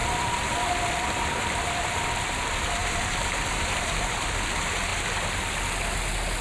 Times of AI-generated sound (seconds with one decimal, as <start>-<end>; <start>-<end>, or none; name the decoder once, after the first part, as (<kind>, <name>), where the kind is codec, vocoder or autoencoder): 0.0-1.8 (vocoder, BigVGAN v2); 2.8-4.5